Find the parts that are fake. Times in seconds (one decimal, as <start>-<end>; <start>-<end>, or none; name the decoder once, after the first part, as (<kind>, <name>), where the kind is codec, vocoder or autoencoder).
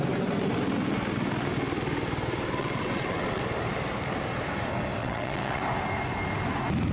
2.6-3.4 (vocoder, WaveNeXt); 5.0-5.6